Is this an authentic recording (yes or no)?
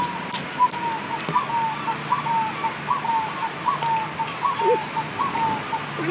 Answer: yes